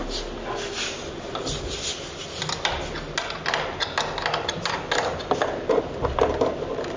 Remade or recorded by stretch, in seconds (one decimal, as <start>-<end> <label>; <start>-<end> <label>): 0.0-7.0 recorded